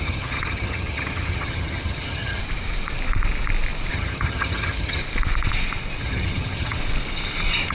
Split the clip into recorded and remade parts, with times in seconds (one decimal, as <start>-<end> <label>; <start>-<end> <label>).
0.0-2.4 remade; 2.4-3.9 recorded; 3.9-5.0 remade; 5.0-6.0 recorded; 6.0-6.8 remade; 6.8-7.7 recorded